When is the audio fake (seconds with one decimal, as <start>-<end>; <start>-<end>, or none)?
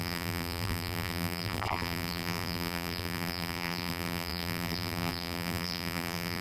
0.0-6.4